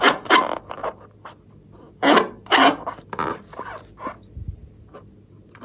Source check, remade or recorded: recorded